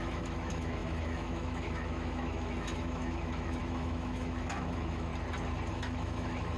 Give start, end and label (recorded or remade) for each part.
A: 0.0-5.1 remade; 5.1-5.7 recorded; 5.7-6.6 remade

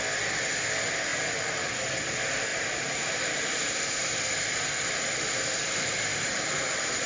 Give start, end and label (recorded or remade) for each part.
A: 0.0-2.5 recorded; 2.5-7.1 remade

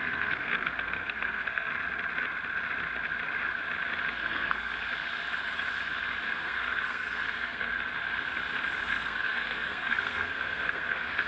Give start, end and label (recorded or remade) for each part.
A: 0.0-1.7 remade; 1.7-4.1 recorded; 4.1-4.7 remade; 4.7-6.3 recorded; 6.3-7.7 remade; 7.7-8.9 recorded; 8.9-11.3 remade

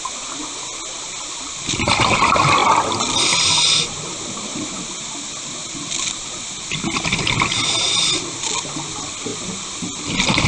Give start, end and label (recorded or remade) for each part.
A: 0.0-5.6 recorded; 5.6-6.4 remade; 6.4-10.5 recorded

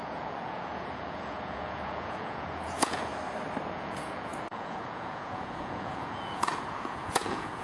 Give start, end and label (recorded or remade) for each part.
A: 0.0-3.1 remade; 3.1-3.7 recorded; 3.7-7.6 remade

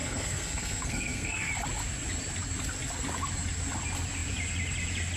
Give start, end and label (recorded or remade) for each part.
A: 0.0-1.5 remade; 1.5-5.2 recorded

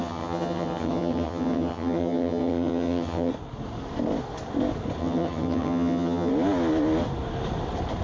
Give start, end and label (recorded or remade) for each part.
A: 0.0-3.3 remade; 3.3-5.0 recorded; 5.0-6.3 remade; 6.3-8.0 recorded

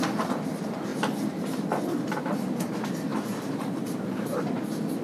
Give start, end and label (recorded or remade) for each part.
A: 0.0-0.9 recorded; 0.9-2.7 remade; 2.7-3.1 recorded; 3.1-4.4 remade; 4.4-5.0 recorded